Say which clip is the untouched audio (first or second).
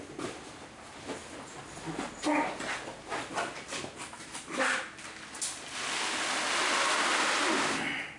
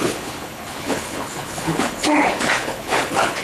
first